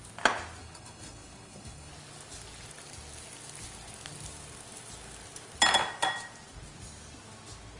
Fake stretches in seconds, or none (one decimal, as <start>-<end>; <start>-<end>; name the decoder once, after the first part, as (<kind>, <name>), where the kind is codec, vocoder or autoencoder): 0.6-1.9 (codec, HILCodec)